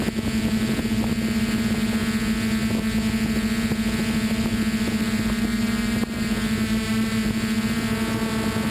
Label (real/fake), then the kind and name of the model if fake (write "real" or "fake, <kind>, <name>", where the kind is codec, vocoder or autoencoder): real